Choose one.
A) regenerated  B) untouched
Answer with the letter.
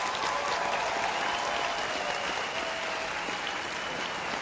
B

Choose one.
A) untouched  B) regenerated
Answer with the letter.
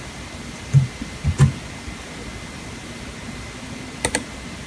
A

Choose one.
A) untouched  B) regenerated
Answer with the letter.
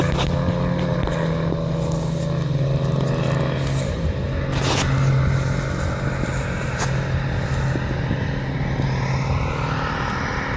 A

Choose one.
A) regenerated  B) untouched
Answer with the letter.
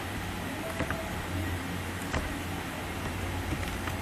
B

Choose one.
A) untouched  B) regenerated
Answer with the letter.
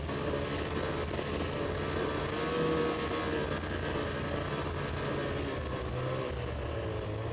A